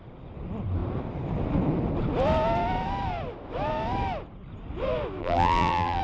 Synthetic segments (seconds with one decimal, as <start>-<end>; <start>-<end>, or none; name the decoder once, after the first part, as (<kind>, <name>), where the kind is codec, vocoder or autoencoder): 5.2-6.0 (vocoder, BigVGAN v2)